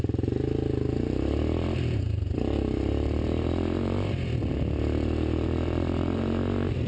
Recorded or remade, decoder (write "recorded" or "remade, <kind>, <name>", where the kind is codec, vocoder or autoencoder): remade, vocoder, BigVGAN v2